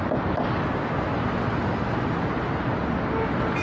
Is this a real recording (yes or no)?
yes